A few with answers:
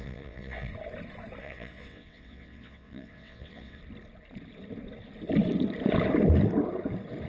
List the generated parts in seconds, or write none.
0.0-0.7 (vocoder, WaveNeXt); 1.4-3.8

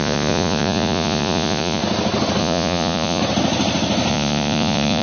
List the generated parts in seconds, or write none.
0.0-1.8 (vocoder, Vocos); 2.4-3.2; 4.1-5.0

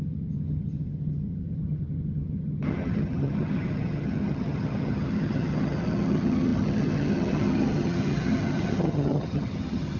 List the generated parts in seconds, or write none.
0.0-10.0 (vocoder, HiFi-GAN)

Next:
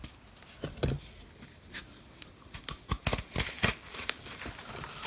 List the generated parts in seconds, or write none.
0.0-0.8 (vocoder, BigVGAN v2); 3.9-5.1

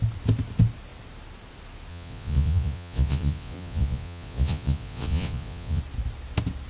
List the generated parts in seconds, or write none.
1.9-5.8 (vocoder, Vocos)